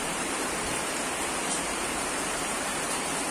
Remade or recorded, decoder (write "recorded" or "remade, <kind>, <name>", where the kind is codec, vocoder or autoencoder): remade, vocoder, BigVGAN v2